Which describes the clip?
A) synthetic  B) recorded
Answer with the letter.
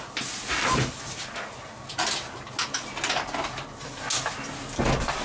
B